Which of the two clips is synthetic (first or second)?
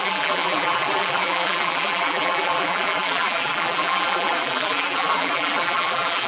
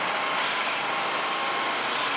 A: first